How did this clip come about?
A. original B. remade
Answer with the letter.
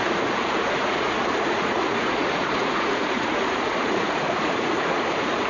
B